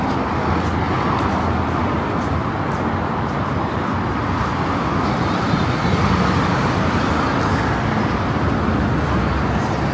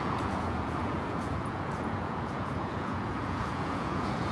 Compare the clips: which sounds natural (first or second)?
first